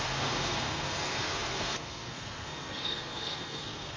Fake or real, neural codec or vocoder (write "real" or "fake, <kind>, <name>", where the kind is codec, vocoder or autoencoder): fake, codec, SNAC